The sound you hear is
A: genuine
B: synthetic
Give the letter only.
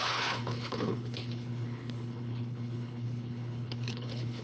B